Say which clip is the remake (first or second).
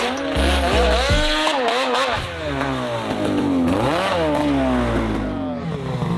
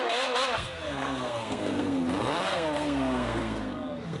second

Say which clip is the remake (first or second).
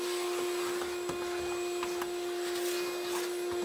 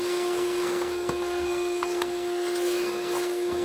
second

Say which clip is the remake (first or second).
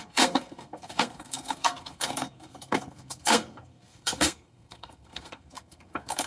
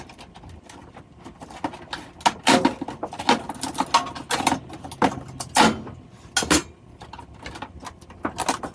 first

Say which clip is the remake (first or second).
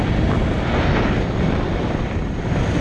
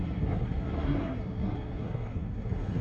second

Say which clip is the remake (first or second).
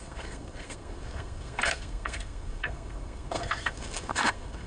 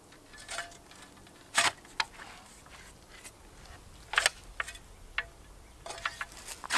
first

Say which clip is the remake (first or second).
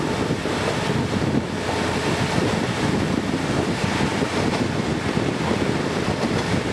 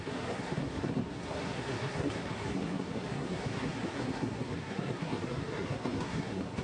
second